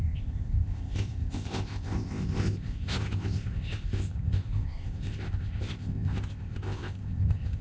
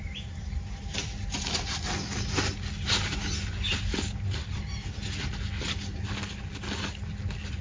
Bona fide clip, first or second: second